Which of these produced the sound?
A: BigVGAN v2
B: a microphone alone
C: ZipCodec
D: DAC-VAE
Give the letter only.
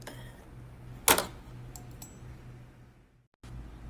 B